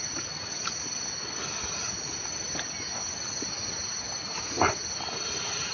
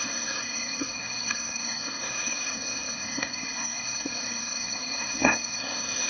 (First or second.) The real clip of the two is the first